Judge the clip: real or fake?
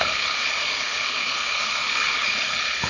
fake